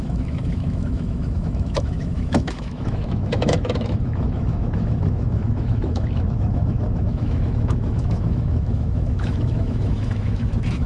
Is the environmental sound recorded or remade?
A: remade